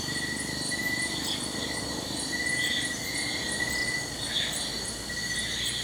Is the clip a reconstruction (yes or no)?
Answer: no